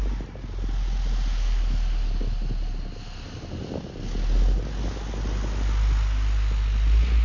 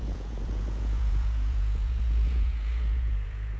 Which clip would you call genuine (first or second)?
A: first